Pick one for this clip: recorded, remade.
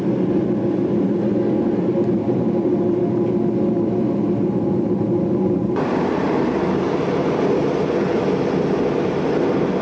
recorded